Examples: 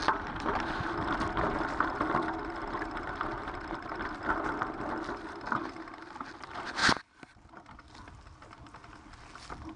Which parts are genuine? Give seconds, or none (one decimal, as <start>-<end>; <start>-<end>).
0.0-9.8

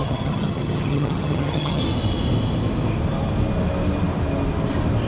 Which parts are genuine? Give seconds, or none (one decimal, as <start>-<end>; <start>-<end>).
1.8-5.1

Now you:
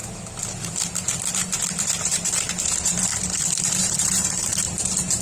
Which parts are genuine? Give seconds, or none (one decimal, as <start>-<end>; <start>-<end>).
0.0-2.6; 3.1-3.6

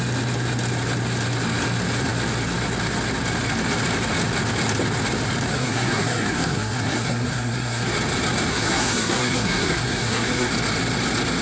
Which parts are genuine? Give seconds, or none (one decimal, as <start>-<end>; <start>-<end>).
0.0-5.5; 7.9-8.5; 10.5-11.4

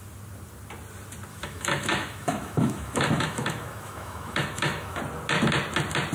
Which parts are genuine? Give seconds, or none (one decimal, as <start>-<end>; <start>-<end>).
0.0-1.3; 5.0-6.1

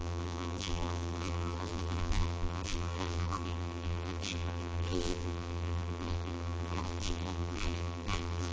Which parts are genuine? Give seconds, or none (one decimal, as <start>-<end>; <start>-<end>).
none

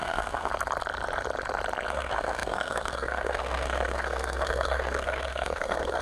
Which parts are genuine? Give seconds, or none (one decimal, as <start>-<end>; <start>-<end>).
0.5-1.9

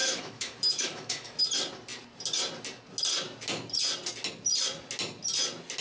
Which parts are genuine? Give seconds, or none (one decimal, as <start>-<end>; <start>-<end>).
1.4-5.8